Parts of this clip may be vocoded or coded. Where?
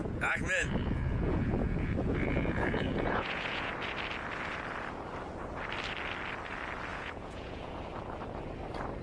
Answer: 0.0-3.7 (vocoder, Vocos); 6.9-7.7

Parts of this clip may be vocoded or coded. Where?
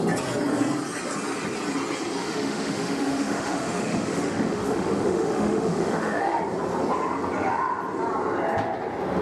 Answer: 2.2-6.4 (autoencoder, DAC-VAE)